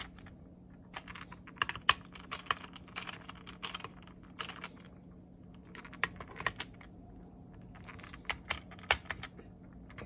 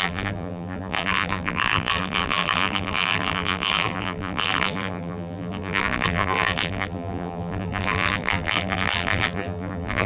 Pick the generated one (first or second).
second